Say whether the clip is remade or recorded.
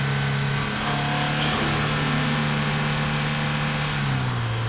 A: recorded